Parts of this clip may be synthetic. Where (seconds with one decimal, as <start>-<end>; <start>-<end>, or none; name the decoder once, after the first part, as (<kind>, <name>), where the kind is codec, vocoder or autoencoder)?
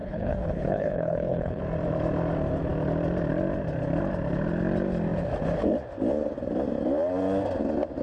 0.0-1.6 (codec, HILCodec)